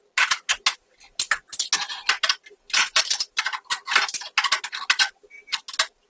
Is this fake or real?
real